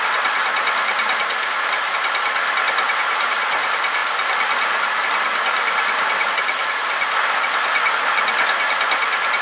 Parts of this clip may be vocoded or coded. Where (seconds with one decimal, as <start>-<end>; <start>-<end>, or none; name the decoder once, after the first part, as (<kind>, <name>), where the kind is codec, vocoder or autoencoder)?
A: none